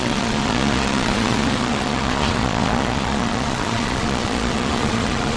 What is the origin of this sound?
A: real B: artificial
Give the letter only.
B